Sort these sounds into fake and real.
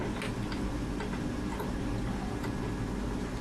real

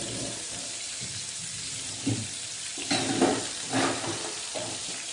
fake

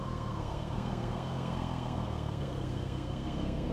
fake